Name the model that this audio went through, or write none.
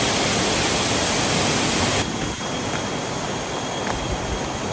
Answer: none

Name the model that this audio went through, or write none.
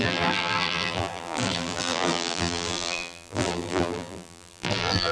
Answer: vocoder, BigVGAN v2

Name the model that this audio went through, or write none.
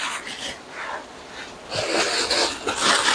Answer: none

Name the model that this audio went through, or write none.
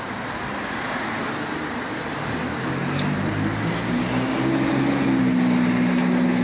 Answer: none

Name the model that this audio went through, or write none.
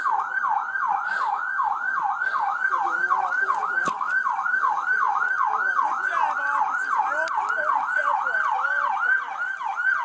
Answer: none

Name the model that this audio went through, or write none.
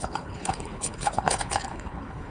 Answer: codec, HILCodec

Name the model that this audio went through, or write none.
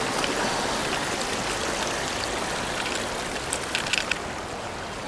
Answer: none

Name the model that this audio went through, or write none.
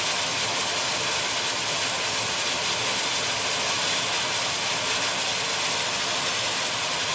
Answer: none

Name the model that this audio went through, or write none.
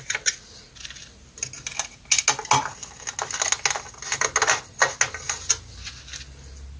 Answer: none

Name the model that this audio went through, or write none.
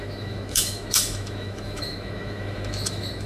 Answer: autoencoder, DAC-VAE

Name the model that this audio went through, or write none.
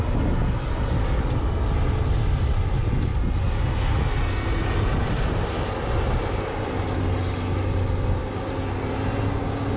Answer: none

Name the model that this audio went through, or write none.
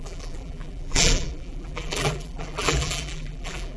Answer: vocoder, BigVGAN v2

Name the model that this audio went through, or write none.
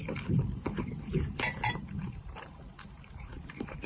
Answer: vocoder, BigVGAN v2